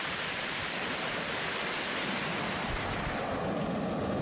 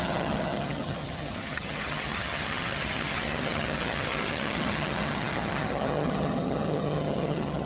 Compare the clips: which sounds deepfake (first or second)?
second